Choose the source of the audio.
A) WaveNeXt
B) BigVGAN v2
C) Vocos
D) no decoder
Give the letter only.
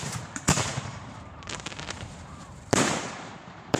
B